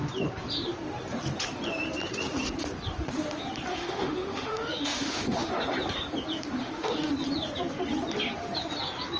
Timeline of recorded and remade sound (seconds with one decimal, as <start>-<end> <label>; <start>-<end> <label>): 0.0-3.7 recorded; 3.7-5.5 remade; 5.5-6.6 recorded; 6.6-7.1 remade; 7.1-9.2 recorded